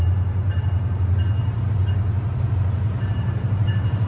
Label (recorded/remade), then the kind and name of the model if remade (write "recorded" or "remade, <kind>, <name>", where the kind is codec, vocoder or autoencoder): remade, vocoder, BigVGAN v2